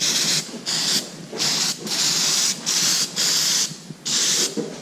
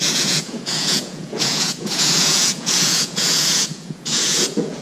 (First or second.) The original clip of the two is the first